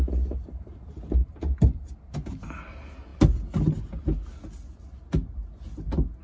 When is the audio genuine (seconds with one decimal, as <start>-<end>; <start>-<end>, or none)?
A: 0.0-6.2